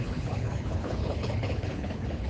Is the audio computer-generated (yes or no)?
yes